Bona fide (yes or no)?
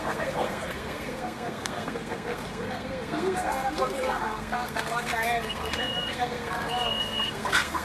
no